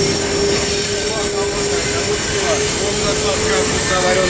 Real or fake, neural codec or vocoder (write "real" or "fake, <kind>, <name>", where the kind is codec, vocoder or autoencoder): real